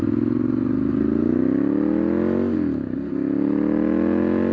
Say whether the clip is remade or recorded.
recorded